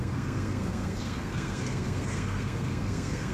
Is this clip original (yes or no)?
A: no